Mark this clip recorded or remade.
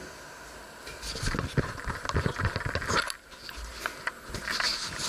recorded